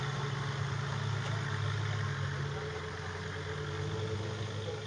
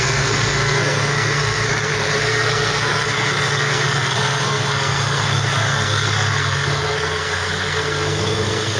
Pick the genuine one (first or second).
first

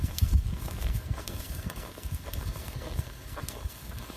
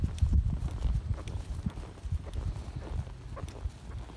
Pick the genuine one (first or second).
second